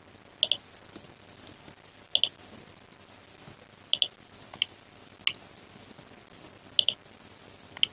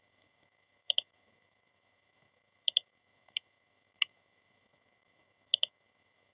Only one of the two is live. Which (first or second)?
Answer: first